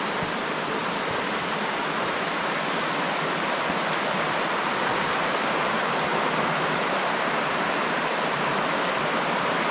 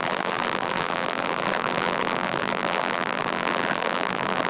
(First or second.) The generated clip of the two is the second